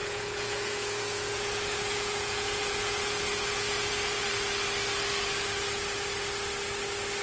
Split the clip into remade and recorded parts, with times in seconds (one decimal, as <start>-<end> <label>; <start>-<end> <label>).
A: 0.0-4.3 remade; 4.3-7.2 recorded